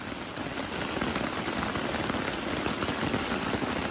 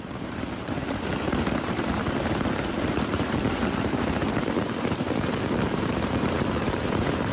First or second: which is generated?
second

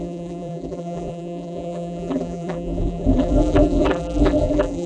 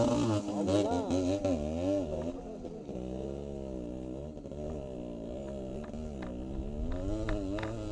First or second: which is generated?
first